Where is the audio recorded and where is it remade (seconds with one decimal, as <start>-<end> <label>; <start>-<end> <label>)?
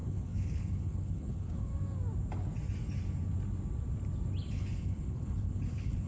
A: 0.0-1.7 remade; 1.7-4.5 recorded; 4.5-6.1 remade